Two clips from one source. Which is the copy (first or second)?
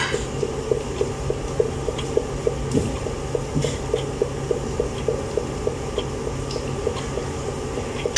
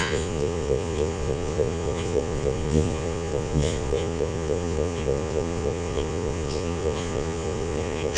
second